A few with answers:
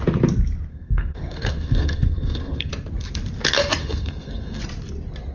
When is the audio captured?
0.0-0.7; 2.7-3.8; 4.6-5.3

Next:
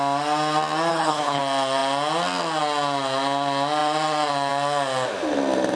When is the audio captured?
0.0-0.9; 1.4-5.8

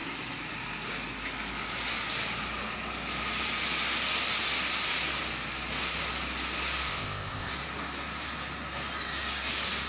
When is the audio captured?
0.0-6.9; 7.5-9.9